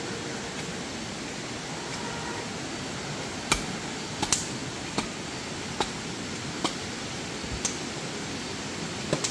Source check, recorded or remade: recorded